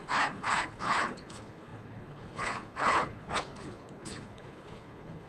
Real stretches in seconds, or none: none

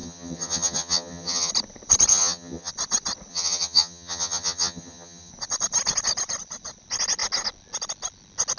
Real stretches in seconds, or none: 1.5-2.1; 2.7-3.3; 5.3-8.6

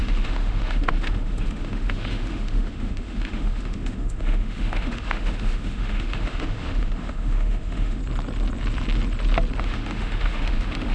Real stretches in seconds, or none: 8.0-9.6

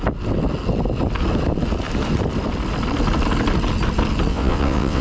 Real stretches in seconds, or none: 0.0-4.3

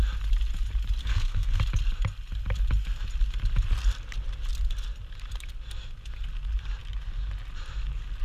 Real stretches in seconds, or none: 0.0-1.0; 1.6-8.2